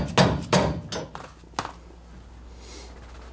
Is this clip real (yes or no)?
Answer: yes